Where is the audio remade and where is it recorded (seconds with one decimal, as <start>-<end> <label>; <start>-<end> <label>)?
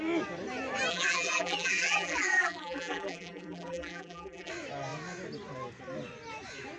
0.0-0.9 recorded; 0.9-4.5 remade; 4.5-6.8 recorded